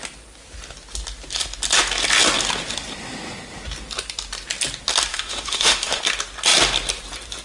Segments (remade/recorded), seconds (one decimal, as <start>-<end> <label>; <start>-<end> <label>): 0.0-5.1 recorded; 5.1-6.0 remade; 6.0-7.4 recorded